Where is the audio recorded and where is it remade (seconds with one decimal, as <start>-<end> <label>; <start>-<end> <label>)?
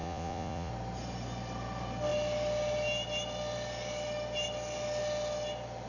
0.0-0.7 remade; 0.7-5.9 recorded